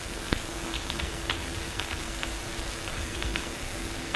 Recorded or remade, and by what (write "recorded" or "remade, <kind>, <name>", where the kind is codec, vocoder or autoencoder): remade, codec, SNAC